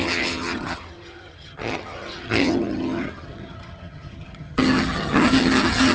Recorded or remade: remade